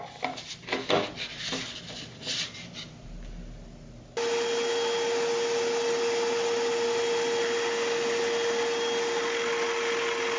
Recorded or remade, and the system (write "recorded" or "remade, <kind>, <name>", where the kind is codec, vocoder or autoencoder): recorded